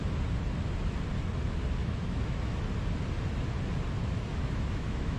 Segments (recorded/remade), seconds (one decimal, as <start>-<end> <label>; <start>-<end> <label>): 0.0-1.8 recorded; 1.8-2.6 remade; 2.6-4.0 recorded; 4.0-5.2 remade